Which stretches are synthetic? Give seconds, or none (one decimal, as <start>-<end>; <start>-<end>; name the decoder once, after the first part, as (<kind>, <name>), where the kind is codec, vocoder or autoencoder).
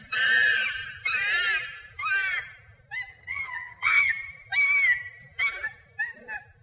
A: 3.1-4.1 (vocoder, HiFi-GAN)